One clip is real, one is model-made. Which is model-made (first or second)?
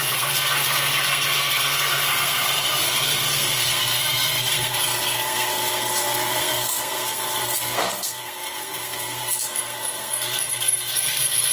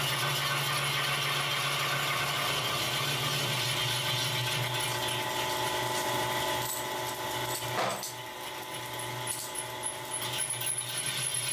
first